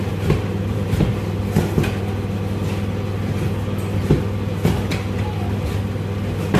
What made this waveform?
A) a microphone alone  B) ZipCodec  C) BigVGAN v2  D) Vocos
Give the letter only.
A